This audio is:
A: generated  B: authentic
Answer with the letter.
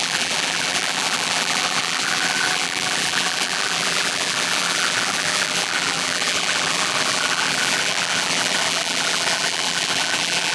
A